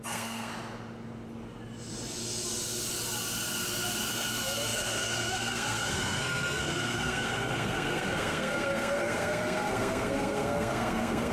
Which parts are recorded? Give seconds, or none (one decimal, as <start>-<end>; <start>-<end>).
0.5-4.1